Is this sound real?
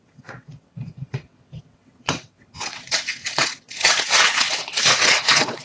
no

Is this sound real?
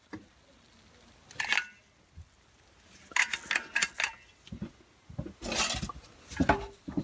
yes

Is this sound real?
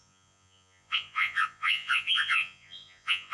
no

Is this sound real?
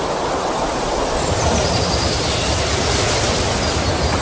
yes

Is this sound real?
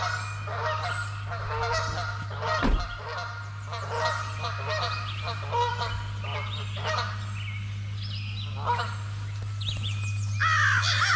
yes